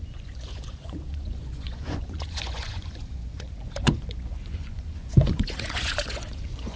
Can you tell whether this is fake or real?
fake